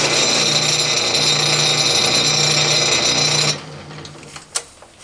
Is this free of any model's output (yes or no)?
yes